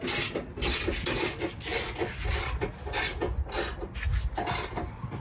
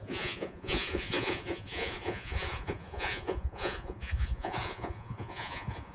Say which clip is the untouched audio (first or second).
first